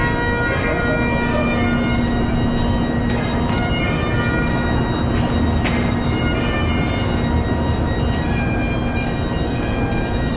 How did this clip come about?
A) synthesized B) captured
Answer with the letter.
B